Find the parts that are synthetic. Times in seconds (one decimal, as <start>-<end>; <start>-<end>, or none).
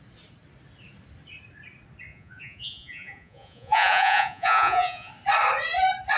2.1-5.1